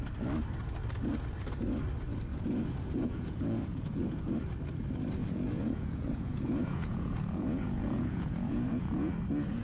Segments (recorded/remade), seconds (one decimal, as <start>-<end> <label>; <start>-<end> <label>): 0.0-2.3 recorded; 2.3-4.3 remade; 4.3-5.2 recorded; 5.2-9.1 remade; 9.1-9.6 recorded